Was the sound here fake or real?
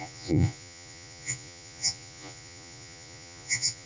fake